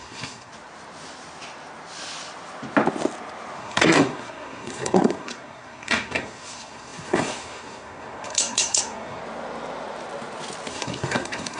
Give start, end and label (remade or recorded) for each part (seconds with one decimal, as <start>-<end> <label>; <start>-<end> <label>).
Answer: 0.0-0.5 remade; 0.5-3.6 recorded; 3.6-9.2 remade; 9.2-10.7 recorded; 10.7-11.6 remade